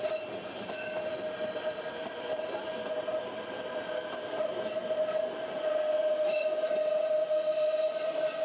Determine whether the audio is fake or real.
real